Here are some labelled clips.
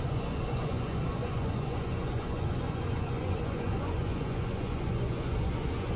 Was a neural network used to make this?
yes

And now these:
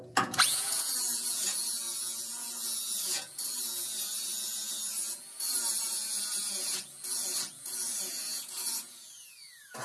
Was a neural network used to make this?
yes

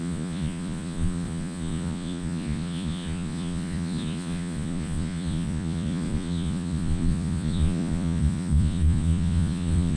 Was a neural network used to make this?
yes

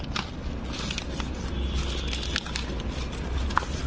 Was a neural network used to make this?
no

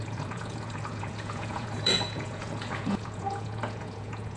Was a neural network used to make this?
yes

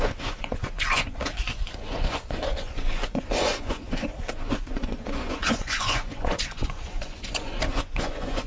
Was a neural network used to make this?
yes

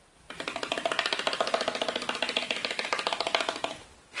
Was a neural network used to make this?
no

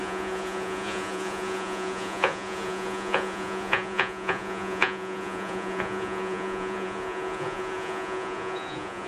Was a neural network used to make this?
yes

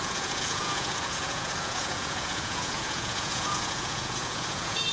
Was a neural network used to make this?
yes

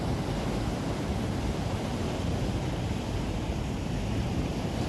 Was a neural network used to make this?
no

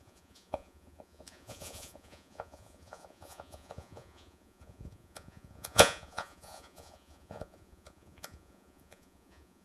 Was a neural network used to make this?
yes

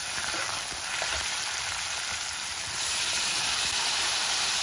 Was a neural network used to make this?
no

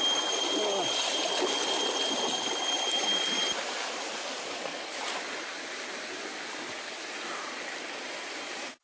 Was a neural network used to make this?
no